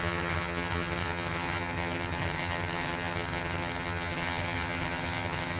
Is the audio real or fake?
fake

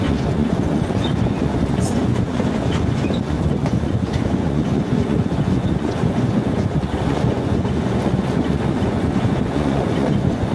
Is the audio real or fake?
fake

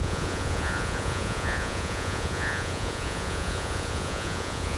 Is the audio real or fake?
fake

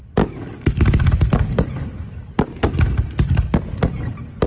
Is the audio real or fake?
real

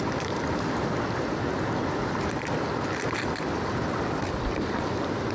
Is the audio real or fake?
real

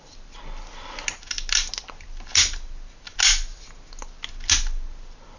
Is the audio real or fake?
real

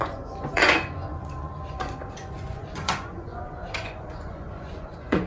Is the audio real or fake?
fake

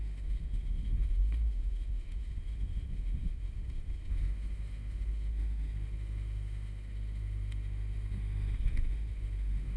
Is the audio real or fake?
fake